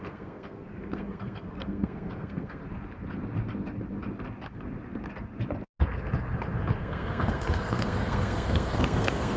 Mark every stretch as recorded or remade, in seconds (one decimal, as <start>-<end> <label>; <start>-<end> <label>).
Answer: 0.0-2.6 remade; 2.6-6.8 recorded; 6.8-9.4 remade